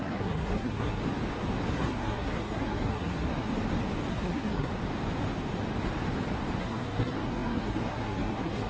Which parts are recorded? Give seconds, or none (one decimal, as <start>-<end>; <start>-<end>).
1.0-1.7; 3.5-4.1; 4.7-6.6